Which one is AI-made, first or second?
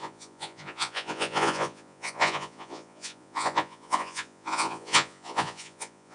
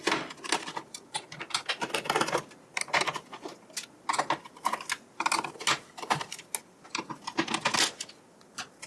first